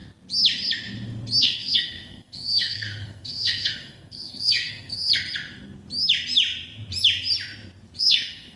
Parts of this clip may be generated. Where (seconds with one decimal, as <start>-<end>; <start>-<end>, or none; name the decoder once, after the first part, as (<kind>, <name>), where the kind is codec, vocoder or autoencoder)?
1.4-5.1 (codec, SNAC); 8.0-8.6